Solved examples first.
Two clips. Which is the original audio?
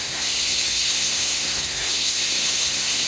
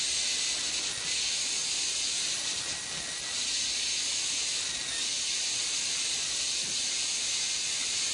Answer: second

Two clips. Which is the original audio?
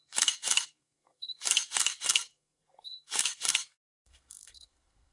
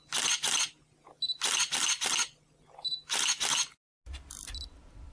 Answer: second